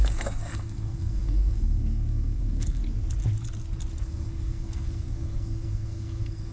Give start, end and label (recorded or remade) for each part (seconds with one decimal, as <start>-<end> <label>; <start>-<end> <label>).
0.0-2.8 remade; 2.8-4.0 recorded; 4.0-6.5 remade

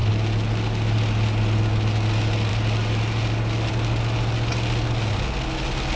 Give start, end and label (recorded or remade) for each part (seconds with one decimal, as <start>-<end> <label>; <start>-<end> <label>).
0.0-6.0 recorded

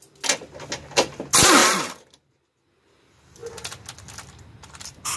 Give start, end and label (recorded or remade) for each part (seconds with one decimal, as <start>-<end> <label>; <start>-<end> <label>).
0.0-5.2 recorded